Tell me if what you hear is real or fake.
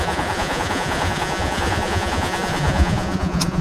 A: fake